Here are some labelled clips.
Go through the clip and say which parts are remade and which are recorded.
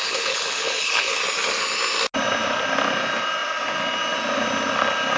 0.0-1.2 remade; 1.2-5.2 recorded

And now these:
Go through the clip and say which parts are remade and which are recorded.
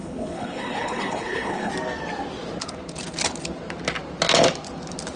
0.0-1.7 remade; 1.7-5.2 recorded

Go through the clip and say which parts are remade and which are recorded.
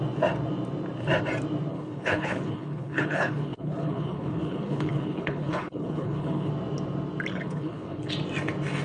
0.0-1.7 recorded; 1.7-6.5 remade; 6.5-7.3 recorded; 7.3-8.1 remade; 8.1-8.8 recorded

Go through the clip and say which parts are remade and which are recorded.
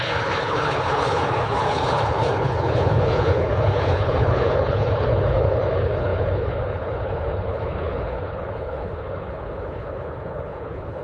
0.0-11.0 remade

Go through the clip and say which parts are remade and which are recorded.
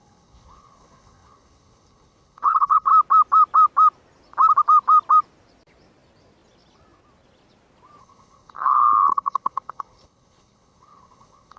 0.0-2.9 remade; 2.9-8.0 recorded; 8.0-11.6 remade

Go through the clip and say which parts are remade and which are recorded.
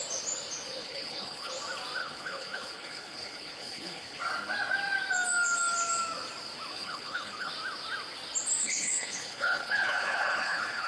0.0-0.8 recorded; 0.8-1.5 remade; 1.5-2.0 recorded; 2.0-4.2 remade; 4.2-6.7 recorded; 6.7-7.5 remade; 7.5-8.6 recorded; 8.6-10.9 remade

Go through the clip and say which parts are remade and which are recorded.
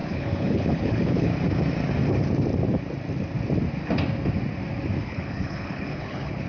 0.0-1.3 remade; 1.3-5.0 recorded; 5.0-6.5 remade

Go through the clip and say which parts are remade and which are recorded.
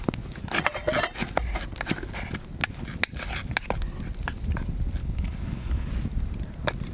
0.0-5.0 recorded; 5.0-5.9 remade; 5.9-6.9 recorded